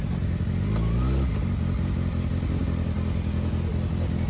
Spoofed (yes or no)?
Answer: no